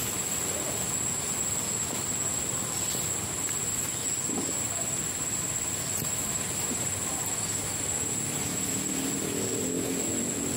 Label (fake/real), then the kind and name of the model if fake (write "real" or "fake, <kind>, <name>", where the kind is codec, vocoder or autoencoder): real